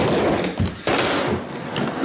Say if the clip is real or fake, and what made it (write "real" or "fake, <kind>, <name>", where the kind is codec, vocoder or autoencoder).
fake, vocoder, BigVGAN v2